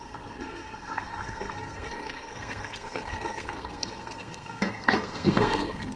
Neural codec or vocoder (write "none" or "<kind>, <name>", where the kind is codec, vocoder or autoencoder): codec, SNAC